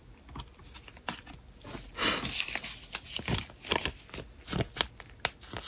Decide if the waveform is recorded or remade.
recorded